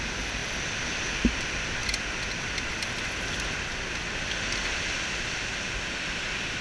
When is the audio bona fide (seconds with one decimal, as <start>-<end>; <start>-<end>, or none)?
0.0-6.6